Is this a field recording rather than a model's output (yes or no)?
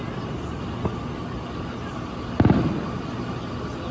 yes